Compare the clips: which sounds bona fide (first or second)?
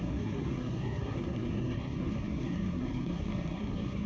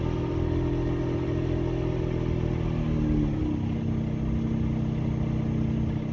second